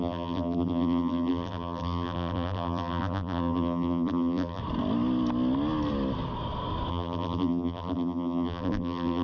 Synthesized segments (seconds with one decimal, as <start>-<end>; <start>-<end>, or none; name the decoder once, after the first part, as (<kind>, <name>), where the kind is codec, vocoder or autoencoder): 0.0-4.6 (vocoder, BigVGAN v2); 6.9-9.2